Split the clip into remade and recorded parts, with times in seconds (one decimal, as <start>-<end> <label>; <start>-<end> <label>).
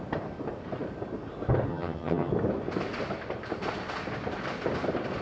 0.0-1.7 recorded; 1.7-2.3 remade; 2.3-5.2 recorded